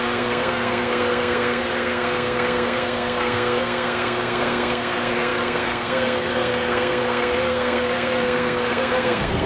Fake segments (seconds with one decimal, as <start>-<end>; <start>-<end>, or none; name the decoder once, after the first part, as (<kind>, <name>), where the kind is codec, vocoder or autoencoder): 0.0-9.5 (codec, SNAC)